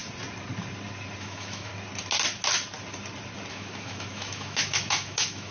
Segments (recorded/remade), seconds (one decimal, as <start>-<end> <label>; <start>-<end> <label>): 0.0-1.2 recorded; 1.2-1.7 remade; 1.7-3.5 recorded; 3.5-5.5 remade